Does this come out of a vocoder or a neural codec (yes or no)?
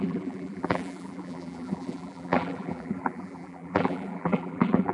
yes